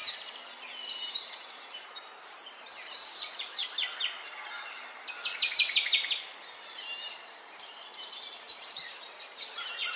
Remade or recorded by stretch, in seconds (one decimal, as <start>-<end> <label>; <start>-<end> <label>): 0.0-0.9 recorded; 0.9-3.6 remade; 3.6-6.7 recorded; 6.7-10.0 remade